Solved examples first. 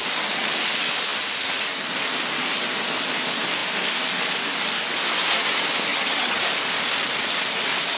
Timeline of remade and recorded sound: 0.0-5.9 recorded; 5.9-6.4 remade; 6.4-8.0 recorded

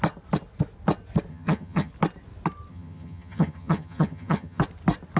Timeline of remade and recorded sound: 0.0-1.3 recorded; 1.3-1.9 remade; 1.9-2.7 recorded; 2.7-4.6 remade; 4.6-5.2 recorded